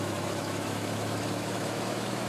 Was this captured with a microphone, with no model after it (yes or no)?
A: no